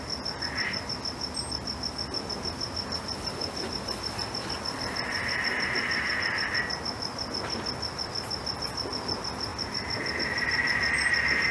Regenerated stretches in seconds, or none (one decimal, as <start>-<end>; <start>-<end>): none